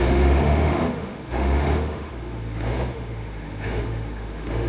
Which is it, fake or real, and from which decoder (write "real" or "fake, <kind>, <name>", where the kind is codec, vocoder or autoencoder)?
fake, autoencoder, DAC-VAE